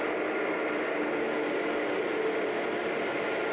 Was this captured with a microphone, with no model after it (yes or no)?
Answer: yes